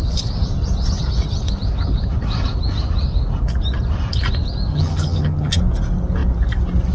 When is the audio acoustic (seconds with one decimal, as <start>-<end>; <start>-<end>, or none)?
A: 0.0-4.7; 5.6-6.9